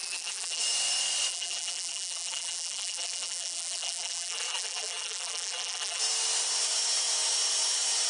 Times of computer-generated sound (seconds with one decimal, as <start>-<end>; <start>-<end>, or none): 0.0-0.6; 1.3-6.0